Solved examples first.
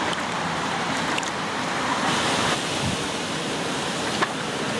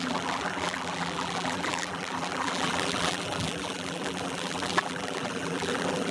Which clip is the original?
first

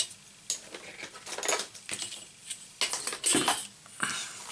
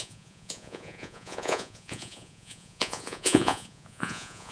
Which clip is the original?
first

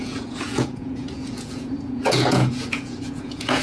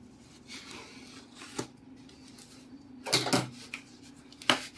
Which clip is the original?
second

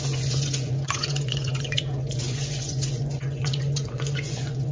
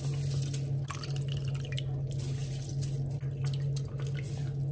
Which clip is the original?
second